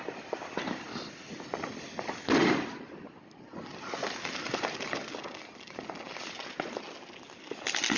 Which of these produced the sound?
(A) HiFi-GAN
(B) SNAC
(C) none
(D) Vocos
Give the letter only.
C